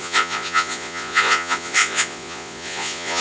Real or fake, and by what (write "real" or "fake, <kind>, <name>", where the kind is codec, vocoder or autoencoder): fake, vocoder, Vocos